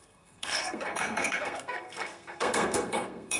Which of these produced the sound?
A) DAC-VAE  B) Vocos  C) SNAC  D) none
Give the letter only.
C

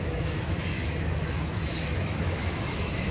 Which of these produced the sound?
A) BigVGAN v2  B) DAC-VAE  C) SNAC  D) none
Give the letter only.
B